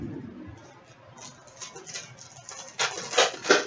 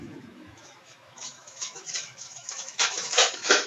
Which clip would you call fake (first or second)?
second